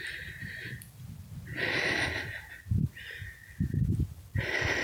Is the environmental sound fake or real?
real